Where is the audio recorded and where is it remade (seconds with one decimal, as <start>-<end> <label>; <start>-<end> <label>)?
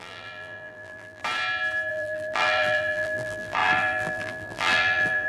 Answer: 0.0-1.2 remade; 1.2-1.9 recorded; 1.9-5.3 remade